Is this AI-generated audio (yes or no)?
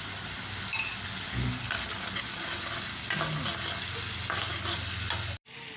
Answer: no